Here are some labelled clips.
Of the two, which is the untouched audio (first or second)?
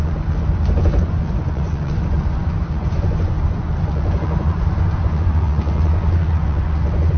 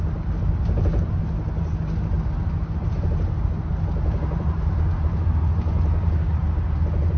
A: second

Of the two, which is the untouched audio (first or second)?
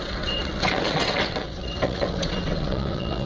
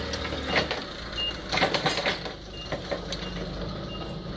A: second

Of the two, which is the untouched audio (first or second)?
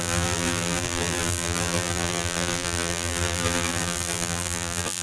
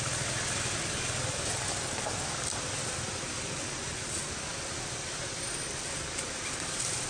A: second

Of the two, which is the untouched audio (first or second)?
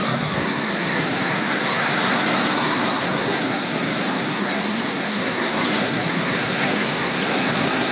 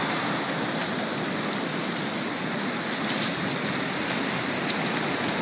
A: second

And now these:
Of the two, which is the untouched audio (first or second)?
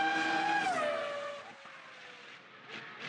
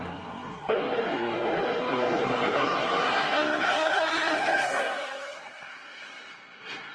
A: first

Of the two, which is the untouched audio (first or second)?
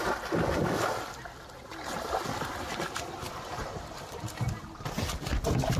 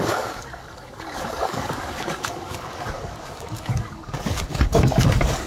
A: first